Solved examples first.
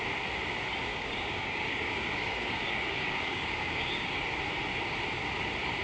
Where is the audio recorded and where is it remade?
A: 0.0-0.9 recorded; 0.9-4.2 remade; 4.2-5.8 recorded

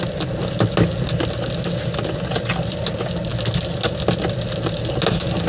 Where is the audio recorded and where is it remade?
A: 0.0-5.5 recorded

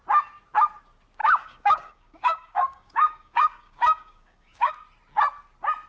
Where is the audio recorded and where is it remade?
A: 0.0-1.2 recorded; 1.2-4.7 remade; 4.7-5.9 recorded

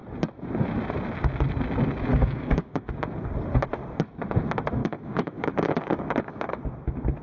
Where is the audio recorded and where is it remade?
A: 0.0-2.1 recorded; 2.1-3.0 remade; 3.0-4.8 recorded; 4.8-6.7 remade; 6.7-7.2 recorded